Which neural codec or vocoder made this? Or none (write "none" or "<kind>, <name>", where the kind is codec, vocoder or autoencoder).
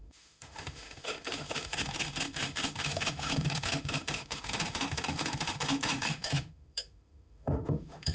autoencoder, DAC-VAE